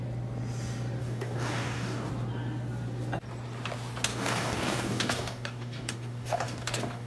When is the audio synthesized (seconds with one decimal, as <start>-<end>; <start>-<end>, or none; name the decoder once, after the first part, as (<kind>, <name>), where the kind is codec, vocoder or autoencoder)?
1.0-2.1 (codec, DAC); 4.1-7.1